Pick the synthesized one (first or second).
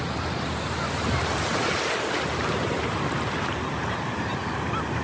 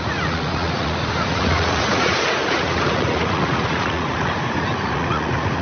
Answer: second